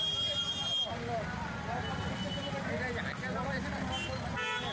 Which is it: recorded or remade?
recorded